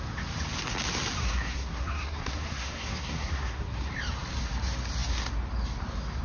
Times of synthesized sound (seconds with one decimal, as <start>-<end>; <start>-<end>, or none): 1.2-3.9